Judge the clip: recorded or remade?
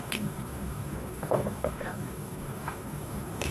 remade